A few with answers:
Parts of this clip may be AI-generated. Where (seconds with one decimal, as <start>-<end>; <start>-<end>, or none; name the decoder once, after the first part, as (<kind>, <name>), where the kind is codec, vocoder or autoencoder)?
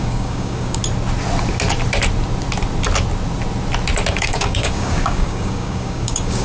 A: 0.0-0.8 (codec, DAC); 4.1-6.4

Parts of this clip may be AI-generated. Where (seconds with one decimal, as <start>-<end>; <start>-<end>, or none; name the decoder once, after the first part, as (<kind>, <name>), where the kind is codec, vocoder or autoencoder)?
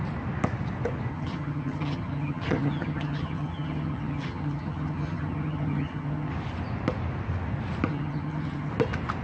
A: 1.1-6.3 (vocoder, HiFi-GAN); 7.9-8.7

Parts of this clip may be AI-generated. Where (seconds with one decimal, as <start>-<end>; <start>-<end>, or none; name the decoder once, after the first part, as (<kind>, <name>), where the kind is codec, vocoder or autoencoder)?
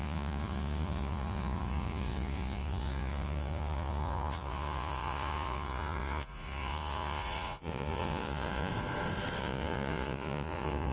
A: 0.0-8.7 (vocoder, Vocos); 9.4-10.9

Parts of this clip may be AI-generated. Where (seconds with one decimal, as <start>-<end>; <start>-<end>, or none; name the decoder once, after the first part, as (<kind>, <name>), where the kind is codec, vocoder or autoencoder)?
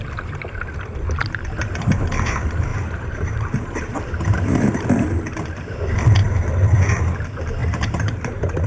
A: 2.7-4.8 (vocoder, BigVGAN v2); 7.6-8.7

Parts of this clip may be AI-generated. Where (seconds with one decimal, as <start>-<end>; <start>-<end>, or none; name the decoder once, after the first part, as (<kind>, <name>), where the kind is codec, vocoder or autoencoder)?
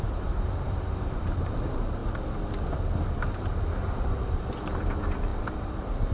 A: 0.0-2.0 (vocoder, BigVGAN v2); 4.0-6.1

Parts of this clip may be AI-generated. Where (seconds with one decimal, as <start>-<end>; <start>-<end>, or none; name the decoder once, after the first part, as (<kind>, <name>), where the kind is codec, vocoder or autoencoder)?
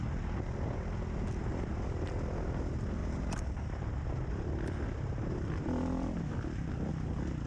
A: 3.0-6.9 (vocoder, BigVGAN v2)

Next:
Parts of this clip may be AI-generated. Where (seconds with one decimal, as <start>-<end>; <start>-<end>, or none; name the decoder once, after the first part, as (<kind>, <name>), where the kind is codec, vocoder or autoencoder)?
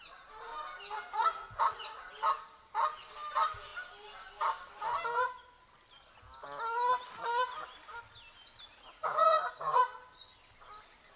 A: 1.1-2.1 (vocoder, Vocos); 8.7-9.8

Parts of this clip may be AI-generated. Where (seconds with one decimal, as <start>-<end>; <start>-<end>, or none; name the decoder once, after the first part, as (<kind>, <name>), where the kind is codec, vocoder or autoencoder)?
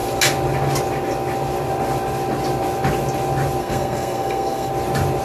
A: 3.6-4.7 (codec, SNAC)